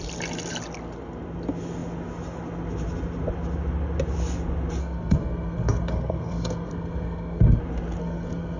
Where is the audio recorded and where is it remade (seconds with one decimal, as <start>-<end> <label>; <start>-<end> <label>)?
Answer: 0.0-4.8 recorded; 4.8-7.6 remade; 7.6-8.0 recorded; 8.0-8.6 remade